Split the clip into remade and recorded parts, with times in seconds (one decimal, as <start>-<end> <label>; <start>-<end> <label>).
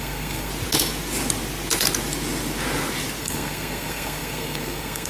0.0-0.5 remade; 0.5-3.2 recorded; 3.2-5.1 remade